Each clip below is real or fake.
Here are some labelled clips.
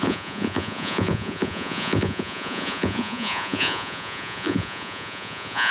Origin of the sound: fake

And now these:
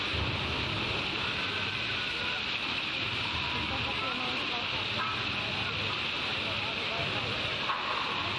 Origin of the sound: real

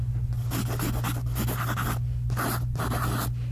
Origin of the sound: real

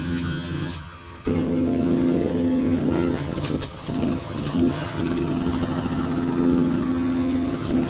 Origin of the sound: fake